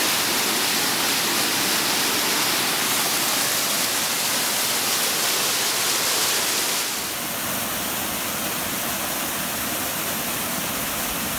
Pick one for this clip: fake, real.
real